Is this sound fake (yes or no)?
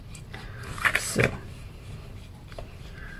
yes